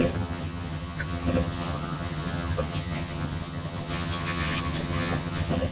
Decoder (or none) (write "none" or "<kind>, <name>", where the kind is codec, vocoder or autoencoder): vocoder, HiFi-GAN